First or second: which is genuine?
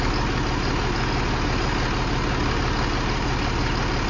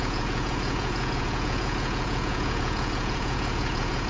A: first